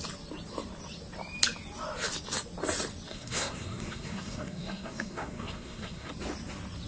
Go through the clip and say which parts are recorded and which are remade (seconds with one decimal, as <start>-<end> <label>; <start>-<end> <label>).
0.0-3.1 recorded; 3.1-6.1 remade; 6.1-6.9 recorded